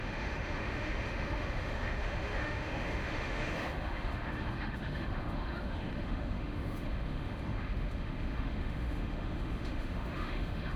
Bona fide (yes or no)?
no